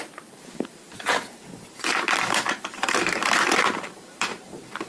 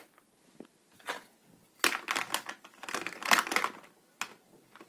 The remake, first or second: first